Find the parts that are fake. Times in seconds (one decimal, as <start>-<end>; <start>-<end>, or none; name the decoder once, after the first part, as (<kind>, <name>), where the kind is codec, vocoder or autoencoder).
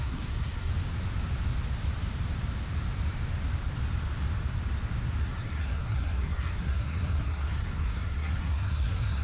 0.0-0.7 (codec, SNAC); 5.2-9.2